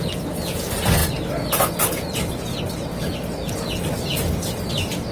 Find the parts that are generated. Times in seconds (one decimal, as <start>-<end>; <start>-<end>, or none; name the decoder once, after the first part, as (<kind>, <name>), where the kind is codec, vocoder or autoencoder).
none